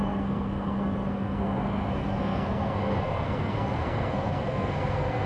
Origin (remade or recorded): remade